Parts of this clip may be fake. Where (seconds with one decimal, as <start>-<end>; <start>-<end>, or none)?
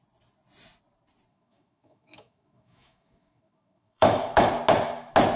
1.3-4.5